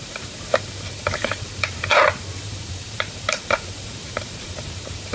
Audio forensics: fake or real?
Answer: fake